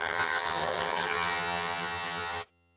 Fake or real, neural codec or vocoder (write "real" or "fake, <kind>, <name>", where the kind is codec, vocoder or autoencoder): fake, vocoder, HiFi-GAN